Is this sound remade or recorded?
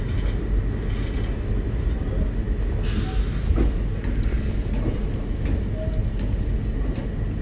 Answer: recorded